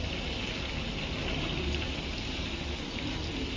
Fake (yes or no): no